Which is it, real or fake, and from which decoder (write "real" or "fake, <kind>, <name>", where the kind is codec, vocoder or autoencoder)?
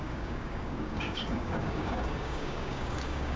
fake, codec, DAC